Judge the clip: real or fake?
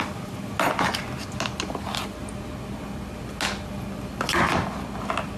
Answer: real